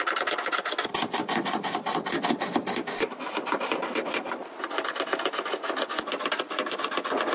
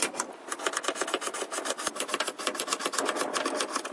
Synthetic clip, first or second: first